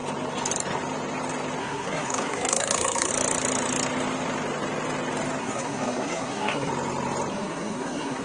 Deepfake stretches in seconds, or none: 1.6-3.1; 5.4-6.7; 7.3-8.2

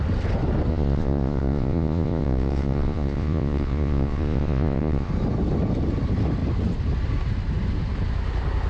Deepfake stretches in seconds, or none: 0.7-5.1

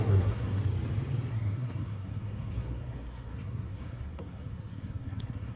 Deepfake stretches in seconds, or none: 0.0-0.6; 1.3-5.6